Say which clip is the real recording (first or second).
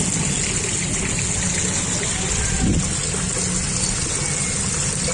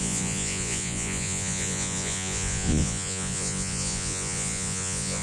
first